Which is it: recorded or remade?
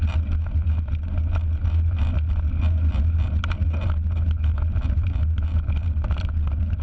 recorded